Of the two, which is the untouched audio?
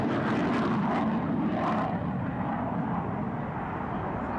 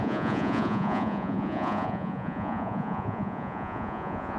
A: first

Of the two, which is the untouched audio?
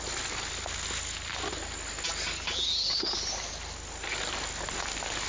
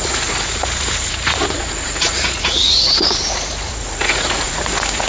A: first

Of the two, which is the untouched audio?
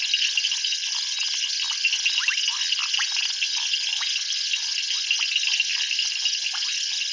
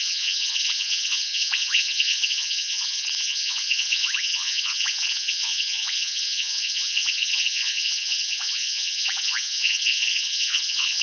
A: first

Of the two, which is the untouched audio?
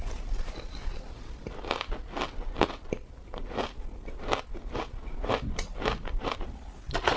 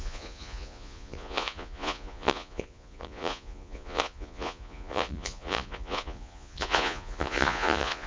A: first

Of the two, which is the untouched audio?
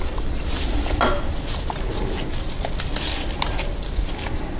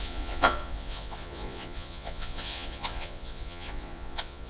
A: first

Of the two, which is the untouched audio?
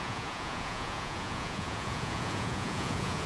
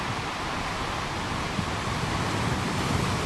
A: second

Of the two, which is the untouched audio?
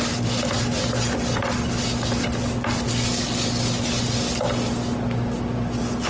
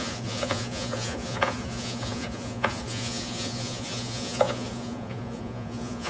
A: first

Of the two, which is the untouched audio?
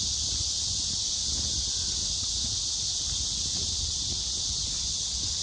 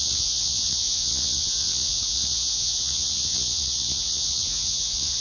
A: first